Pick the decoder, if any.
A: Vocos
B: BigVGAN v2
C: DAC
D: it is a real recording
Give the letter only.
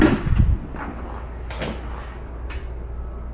D